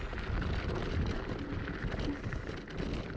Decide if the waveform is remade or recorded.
recorded